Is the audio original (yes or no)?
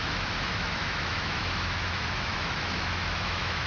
no